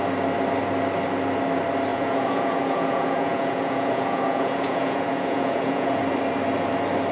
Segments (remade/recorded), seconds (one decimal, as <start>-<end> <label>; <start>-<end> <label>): 0.0-1.9 recorded; 1.9-6.0 remade; 6.0-7.1 recorded